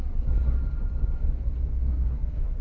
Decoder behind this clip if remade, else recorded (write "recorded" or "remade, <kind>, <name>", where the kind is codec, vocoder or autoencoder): recorded